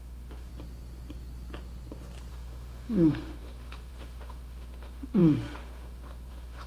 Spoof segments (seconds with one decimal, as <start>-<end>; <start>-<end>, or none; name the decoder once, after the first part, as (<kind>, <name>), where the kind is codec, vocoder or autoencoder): 0.0-0.5 (autoencoder, DAC-VAE); 2.3-6.7

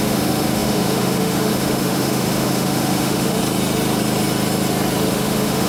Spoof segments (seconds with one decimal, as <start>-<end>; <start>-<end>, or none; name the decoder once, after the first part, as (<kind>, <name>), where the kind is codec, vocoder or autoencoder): 0.0-3.4 (autoencoder, DAC-VAE); 5.1-5.7

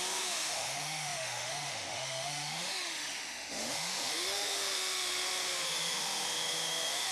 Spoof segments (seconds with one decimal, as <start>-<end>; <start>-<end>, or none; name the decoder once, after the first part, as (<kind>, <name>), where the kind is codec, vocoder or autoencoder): 0.0-7.1 (autoencoder, DAC-VAE)

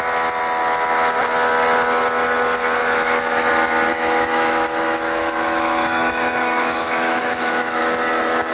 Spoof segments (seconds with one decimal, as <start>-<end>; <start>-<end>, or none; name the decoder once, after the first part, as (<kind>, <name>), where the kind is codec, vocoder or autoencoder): 2.8-3.5 (autoencoder, DAC-VAE); 3.9-7.8

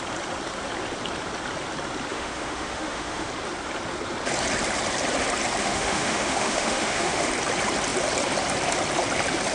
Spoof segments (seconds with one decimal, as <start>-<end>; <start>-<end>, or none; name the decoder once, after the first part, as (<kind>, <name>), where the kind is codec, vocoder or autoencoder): 2.1-3.3 (autoencoder, DAC-VAE); 5.6-7.3